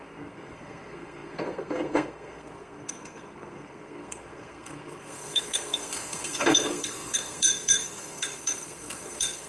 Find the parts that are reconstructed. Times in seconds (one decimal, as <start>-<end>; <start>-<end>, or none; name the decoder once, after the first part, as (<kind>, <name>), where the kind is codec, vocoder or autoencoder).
0.0-9.5 (codec, SNAC)

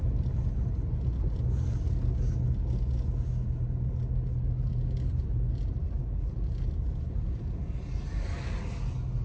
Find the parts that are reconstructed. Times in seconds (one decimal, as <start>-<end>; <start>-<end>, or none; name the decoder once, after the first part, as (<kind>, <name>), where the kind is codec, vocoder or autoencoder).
none

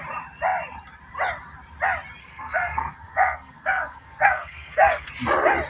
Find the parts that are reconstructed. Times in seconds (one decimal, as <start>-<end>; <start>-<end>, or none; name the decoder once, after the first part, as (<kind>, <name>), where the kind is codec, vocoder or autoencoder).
2.2-5.1 (codec, SNAC)

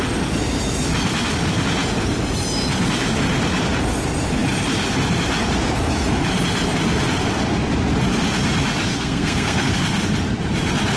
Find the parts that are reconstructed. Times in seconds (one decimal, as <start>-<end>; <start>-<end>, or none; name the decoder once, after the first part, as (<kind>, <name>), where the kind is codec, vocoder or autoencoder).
8.9-9.7 (codec, SNAC)

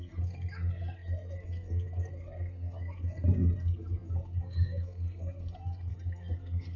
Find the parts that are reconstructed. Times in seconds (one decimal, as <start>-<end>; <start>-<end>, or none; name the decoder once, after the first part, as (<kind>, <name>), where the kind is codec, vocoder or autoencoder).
0.0-6.8 (codec, SNAC)

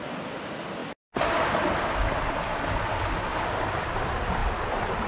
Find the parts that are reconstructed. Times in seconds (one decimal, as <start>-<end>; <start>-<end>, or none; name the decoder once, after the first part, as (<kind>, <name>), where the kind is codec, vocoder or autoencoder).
none

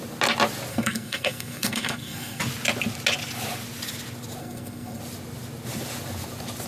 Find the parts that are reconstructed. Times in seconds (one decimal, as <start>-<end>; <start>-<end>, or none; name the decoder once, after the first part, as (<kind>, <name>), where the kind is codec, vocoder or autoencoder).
0.7-2.4 (codec, SNAC); 4.4-5.0